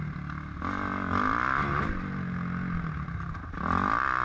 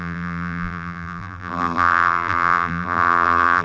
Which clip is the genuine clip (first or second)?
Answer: first